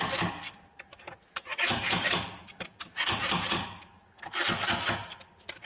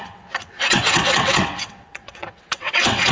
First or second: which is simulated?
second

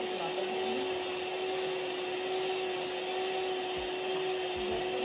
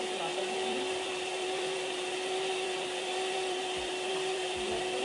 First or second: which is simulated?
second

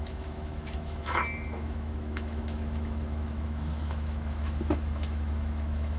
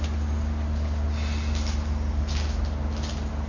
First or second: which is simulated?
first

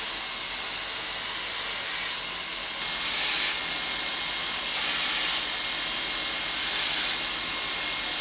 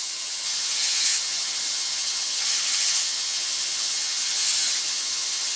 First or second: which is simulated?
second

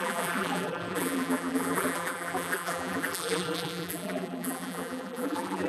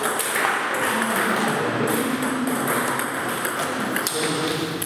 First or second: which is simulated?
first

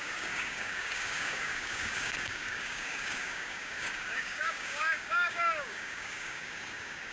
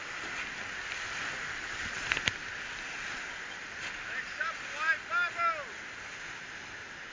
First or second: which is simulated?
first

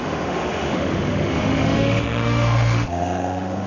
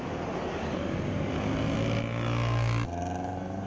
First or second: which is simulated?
first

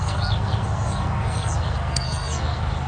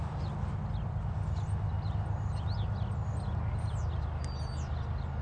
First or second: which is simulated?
first